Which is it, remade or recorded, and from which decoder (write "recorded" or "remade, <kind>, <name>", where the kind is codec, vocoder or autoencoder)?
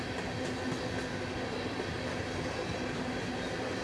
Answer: recorded